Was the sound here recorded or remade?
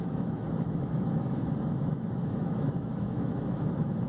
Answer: remade